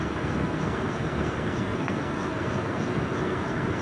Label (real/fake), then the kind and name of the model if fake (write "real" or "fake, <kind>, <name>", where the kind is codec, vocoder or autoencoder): fake, codec, SNAC